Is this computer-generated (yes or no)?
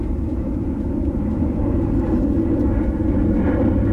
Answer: yes